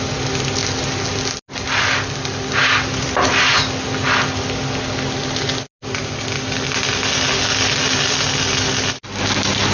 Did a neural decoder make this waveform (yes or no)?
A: no